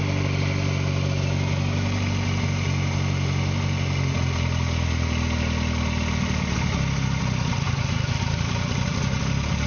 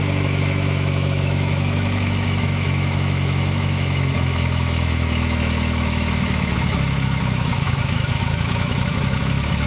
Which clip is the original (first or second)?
first